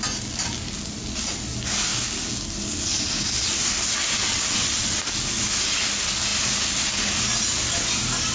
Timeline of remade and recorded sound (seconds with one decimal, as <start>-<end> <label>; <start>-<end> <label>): 0.0-4.2 recorded; 4.2-5.0 remade; 5.0-8.3 recorded